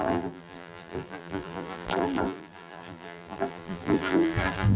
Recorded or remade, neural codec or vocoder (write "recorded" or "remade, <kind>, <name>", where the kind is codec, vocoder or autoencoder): remade, vocoder, BigVGAN v2